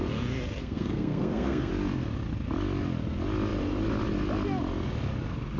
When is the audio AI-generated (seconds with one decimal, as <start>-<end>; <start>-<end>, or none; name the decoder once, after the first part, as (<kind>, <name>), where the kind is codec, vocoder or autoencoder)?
0.6-1.7 (codec, SNAC)